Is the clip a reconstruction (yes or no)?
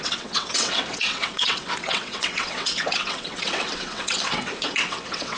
yes